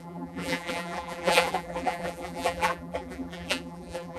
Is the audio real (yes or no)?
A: no